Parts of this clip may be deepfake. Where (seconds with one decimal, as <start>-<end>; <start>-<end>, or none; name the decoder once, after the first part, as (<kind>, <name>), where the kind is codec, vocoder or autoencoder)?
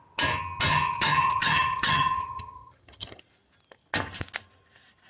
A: 0.7-3.2 (vocoder, HiFi-GAN)